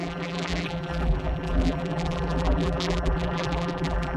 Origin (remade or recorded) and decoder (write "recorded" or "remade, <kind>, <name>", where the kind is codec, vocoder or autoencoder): remade, vocoder, BigVGAN v2